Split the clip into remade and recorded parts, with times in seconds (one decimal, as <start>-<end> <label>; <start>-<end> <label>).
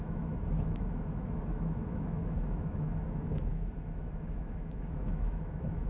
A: 0.0-5.9 remade